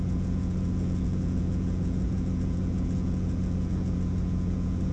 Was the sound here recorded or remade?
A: remade